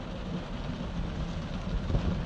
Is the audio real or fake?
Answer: real